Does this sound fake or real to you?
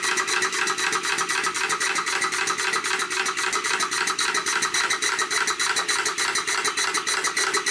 real